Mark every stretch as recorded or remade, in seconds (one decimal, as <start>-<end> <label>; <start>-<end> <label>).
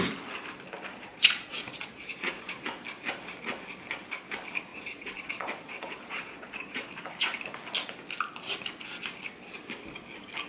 0.0-0.9 recorded; 0.9-2.6 remade; 2.6-4.7 recorded; 4.7-6.9 remade; 6.9-10.5 recorded